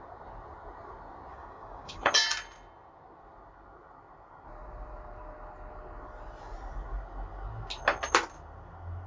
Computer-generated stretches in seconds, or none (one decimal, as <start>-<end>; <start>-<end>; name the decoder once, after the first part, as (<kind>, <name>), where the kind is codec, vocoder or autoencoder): 1.3-2.1 (codec, DAC)